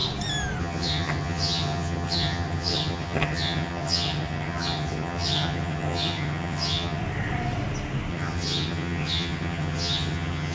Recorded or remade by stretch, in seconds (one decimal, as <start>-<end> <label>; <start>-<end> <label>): 0.0-0.6 recorded; 0.6-7.0 remade; 7.0-8.1 recorded; 8.1-10.5 remade